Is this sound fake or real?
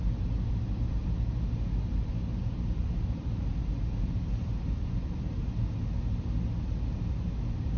real